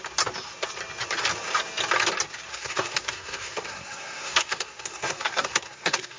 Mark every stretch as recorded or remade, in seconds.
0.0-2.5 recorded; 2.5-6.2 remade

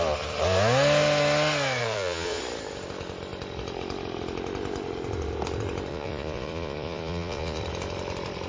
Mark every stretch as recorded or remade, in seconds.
0.0-1.8 recorded; 1.8-2.4 remade; 2.4-5.9 recorded; 5.9-7.6 remade; 7.6-8.5 recorded

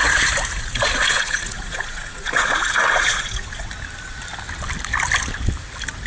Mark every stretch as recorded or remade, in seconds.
0.0-3.7 remade; 3.7-6.1 recorded